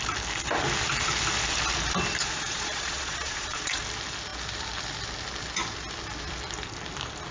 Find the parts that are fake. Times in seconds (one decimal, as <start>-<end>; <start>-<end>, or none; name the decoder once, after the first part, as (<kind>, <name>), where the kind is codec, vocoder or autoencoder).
2.2-3.8 (vocoder, Vocos)